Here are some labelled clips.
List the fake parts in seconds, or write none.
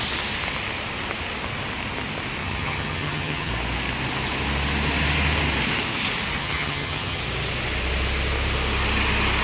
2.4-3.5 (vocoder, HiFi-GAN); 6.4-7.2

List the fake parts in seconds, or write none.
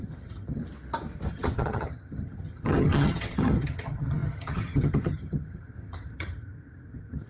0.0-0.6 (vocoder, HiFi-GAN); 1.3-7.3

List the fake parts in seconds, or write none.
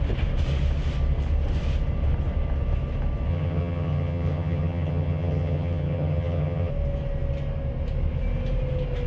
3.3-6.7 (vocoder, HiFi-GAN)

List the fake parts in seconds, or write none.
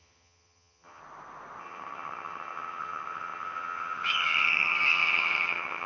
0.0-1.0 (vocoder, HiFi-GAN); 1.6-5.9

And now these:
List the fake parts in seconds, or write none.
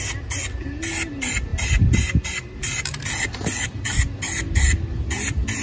none